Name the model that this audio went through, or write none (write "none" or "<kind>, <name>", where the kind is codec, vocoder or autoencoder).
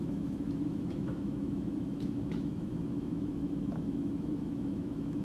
autoencoder, DAC-VAE